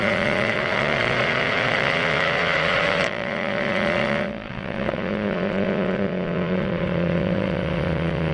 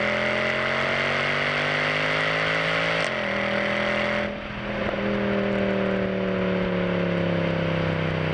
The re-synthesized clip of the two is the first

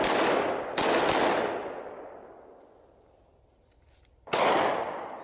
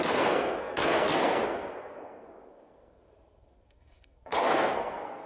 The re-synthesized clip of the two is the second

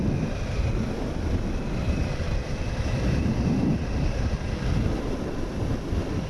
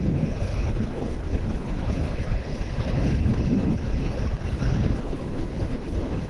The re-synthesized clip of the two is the second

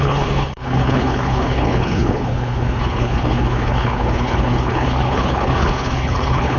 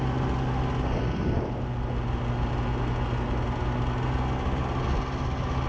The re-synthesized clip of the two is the first